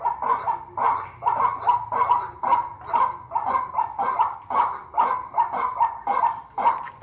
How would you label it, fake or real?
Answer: real